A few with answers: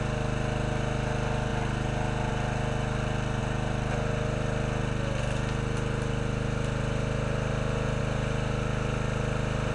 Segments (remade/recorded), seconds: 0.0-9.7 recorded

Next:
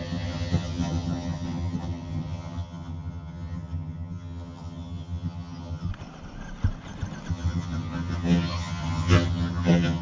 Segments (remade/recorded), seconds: 0.0-5.9 remade; 5.9-7.3 recorded; 7.3-10.0 remade

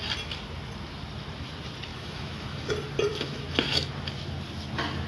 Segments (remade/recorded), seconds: 0.0-1.9 recorded; 1.9-2.7 remade; 2.7-3.1 recorded; 3.1-3.9 remade; 3.9-5.1 recorded

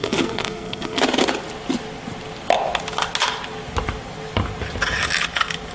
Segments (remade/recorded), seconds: 0.0-1.0 remade; 1.0-5.7 recorded

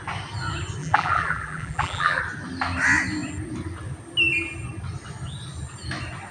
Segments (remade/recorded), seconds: 0.0-0.8 recorded; 0.8-2.2 remade; 2.2-6.3 recorded